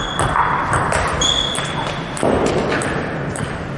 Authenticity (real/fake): real